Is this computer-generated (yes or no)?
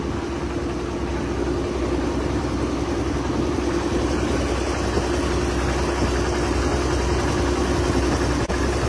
no